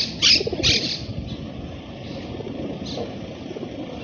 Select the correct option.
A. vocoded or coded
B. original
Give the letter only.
B